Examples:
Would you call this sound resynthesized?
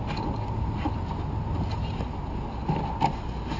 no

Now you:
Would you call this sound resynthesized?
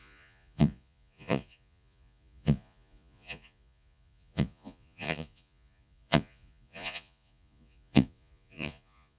yes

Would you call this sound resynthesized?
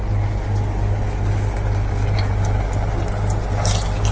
no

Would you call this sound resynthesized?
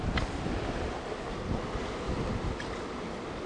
no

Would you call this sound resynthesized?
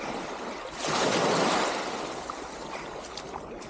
no